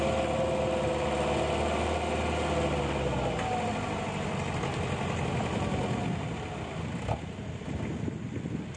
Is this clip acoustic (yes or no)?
yes